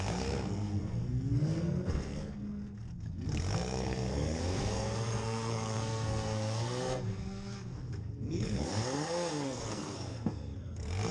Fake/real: fake